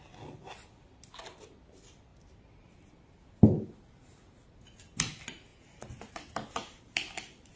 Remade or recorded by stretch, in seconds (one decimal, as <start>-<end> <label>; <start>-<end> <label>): 0.0-7.6 recorded